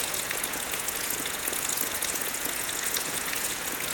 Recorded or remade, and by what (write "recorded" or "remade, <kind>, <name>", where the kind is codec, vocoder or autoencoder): remade, vocoder, Vocos